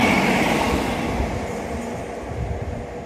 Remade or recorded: recorded